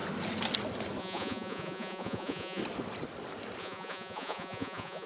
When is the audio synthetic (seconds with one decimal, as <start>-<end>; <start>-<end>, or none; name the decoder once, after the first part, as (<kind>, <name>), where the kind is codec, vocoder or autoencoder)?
1.0-2.6 (vocoder, Vocos); 3.6-5.1